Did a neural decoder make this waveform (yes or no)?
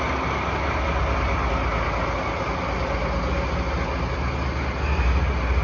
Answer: no